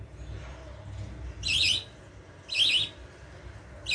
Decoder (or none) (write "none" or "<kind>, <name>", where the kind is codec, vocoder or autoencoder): none